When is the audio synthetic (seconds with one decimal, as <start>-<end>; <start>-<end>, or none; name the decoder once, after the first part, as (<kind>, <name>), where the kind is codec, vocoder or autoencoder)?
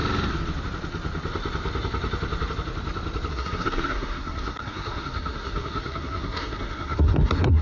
3.3-7.6 (codec, SNAC)